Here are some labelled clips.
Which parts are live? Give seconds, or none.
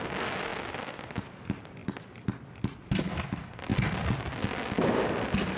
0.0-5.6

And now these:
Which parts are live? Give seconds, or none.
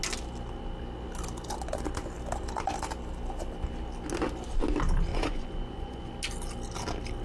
0.0-5.1; 6.1-7.2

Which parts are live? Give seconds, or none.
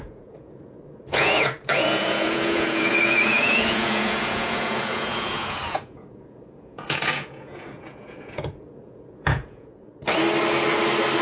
9.9-11.2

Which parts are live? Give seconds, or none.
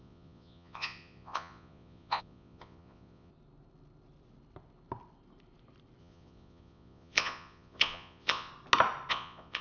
3.3-6.0; 8.5-9.1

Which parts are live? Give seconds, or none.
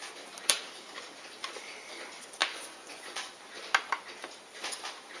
0.0-2.4; 3.3-5.2